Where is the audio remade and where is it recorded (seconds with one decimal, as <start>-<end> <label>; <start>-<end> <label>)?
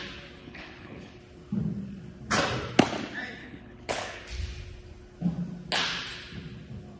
0.0-0.4 recorded; 0.4-1.2 remade; 1.2-3.4 recorded; 3.4-4.2 remade; 4.2-7.0 recorded